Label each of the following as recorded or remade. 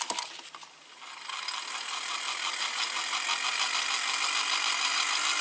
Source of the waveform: remade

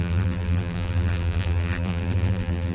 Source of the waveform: remade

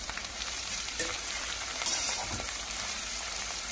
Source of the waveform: remade